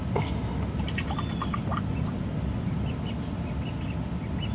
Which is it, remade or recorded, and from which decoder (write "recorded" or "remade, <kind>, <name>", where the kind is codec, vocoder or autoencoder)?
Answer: recorded